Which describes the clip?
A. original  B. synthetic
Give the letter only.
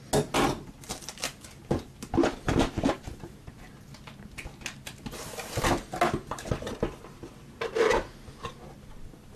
A